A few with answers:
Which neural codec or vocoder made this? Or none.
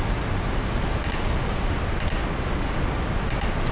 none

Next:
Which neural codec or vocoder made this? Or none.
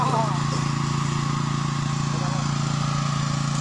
none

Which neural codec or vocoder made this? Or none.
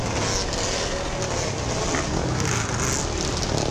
none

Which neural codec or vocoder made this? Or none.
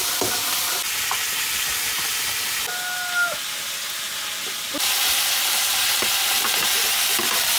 none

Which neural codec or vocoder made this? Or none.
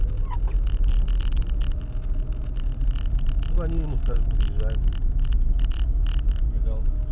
none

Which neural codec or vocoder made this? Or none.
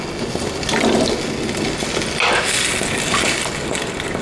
none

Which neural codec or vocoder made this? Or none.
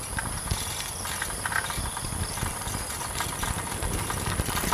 vocoder, BigVGAN v2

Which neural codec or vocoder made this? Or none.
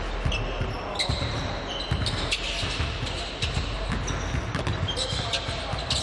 none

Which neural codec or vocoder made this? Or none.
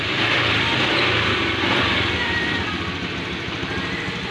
none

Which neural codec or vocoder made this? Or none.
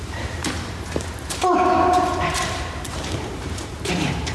vocoder, BigVGAN v2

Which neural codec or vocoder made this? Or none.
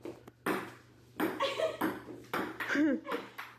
none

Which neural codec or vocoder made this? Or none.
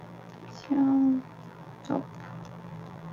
vocoder, BigVGAN v2